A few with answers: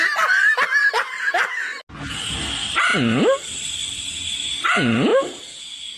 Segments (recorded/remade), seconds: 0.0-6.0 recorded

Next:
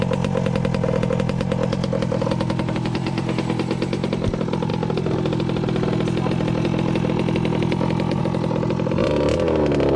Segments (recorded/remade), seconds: 0.0-10.0 recorded